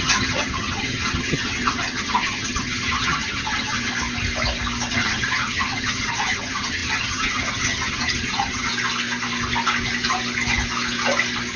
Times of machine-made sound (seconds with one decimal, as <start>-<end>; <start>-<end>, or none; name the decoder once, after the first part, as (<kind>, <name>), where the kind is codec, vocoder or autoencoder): 0.0-3.9 (vocoder, HiFi-GAN); 4.9-8.7

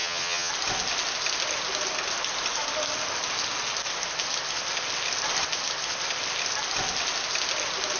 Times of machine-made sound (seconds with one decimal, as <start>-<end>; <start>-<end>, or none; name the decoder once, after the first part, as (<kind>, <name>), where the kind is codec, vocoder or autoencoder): 0.0-0.5 (vocoder, HiFi-GAN)

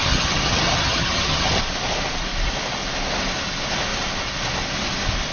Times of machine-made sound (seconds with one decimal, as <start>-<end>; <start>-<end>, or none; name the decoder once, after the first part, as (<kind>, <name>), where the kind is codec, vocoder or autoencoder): 0.0-1.6 (vocoder, HiFi-GAN)

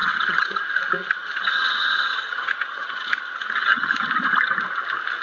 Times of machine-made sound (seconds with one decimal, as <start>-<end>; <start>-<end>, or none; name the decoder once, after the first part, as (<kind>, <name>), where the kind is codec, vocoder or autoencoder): 0.0-0.6 (vocoder, HiFi-GAN); 1.0-4.1

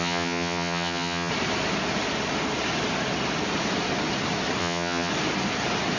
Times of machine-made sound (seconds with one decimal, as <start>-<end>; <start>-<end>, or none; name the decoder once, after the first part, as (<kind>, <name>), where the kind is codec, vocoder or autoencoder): 0.0-1.3 (vocoder, HiFi-GAN); 4.6-5.1